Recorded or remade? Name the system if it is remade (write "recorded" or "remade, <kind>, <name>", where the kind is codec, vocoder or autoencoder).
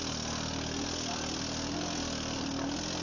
recorded